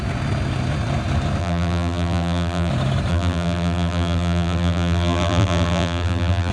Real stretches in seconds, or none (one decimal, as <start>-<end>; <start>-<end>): 0.0-1.4; 2.7-3.1